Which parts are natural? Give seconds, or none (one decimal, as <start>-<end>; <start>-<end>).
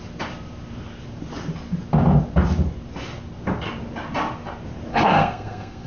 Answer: 0.0-4.9